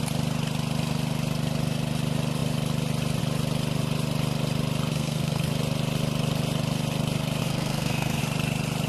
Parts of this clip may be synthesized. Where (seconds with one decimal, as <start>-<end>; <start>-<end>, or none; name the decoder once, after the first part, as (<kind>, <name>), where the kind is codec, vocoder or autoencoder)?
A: 4.9-5.5 (codec, SNAC); 7.4-8.2